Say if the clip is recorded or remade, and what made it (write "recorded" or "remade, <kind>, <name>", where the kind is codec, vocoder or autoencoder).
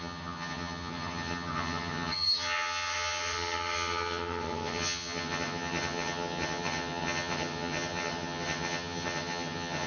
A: remade, vocoder, HiFi-GAN